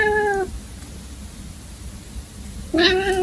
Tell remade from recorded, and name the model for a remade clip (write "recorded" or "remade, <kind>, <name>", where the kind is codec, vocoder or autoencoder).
recorded